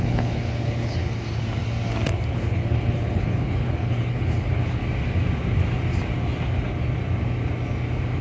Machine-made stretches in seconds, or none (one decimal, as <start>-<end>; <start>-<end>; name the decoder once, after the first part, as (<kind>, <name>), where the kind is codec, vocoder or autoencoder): 0.0-1.0 (codec, HILCodec); 2.3-4.8